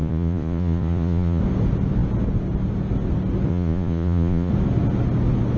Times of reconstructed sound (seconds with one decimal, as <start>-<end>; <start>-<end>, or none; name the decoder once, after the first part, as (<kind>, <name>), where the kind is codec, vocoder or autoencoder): 0.0-1.4 (vocoder, Vocos); 3.5-4.5